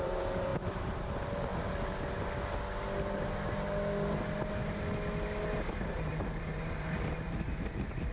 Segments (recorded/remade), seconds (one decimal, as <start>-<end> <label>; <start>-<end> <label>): 0.0-1.5 remade; 1.5-5.9 recorded; 5.9-8.1 remade